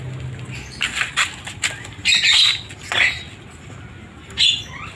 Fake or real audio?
real